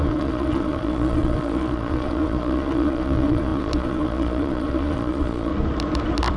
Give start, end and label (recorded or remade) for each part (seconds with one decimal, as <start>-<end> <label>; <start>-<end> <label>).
0.0-5.5 remade; 5.5-6.4 recorded